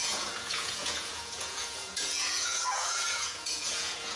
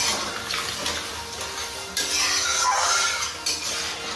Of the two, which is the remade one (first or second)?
first